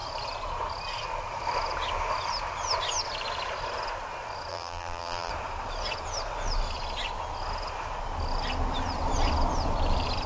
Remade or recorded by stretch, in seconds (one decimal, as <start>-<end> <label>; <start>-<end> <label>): 0.0-4.5 recorded; 4.5-5.3 remade; 5.3-10.3 recorded